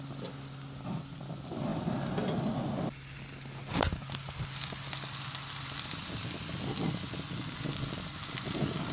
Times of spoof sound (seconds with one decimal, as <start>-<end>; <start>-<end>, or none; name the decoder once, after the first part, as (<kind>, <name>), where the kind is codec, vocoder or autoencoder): none